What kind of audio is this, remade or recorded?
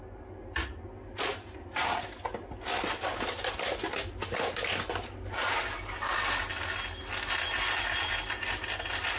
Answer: recorded